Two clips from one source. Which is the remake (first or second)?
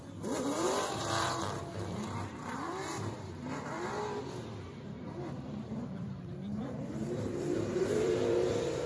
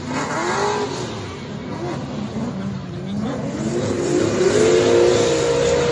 first